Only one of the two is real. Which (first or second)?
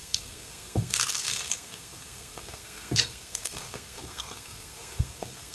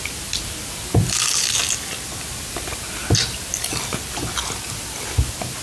second